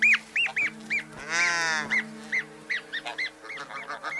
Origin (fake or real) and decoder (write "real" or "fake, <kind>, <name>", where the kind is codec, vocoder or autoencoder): real